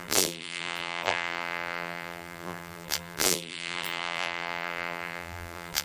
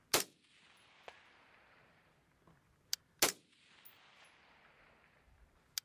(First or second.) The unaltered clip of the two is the second